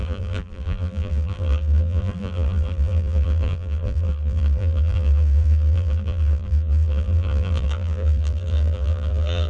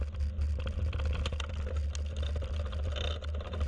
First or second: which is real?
second